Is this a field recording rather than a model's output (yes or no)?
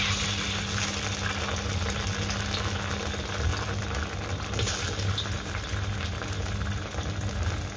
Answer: yes